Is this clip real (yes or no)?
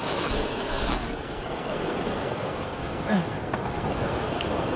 no